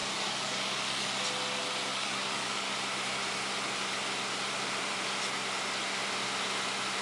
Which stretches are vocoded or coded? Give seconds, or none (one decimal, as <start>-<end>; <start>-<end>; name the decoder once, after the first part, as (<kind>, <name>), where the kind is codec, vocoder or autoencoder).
0.0-1.2 (codec, DAC); 1.9-2.7